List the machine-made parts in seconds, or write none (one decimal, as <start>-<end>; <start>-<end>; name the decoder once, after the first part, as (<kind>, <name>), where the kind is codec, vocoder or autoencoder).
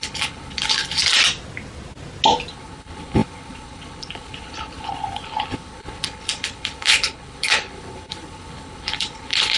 0.0-1.0 (codec, HILCodec); 2.5-9.6